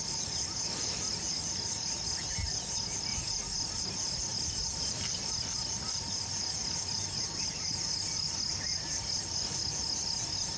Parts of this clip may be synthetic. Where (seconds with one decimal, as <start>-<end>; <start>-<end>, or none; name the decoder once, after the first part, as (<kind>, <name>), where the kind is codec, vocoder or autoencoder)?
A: none